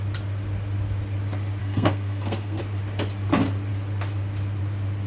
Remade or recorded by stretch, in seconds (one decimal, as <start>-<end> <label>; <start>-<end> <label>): 0.0-1.6 recorded; 1.6-2.6 remade; 2.6-5.1 recorded